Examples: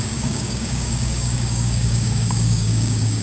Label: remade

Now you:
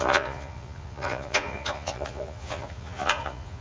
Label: remade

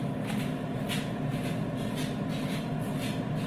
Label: recorded